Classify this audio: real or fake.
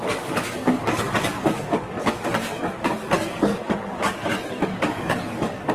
fake